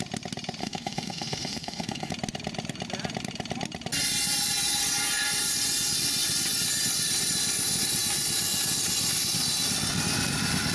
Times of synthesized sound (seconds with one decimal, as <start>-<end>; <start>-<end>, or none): 0.6-2.1